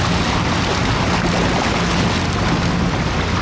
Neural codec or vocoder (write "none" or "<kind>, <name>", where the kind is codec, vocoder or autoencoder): none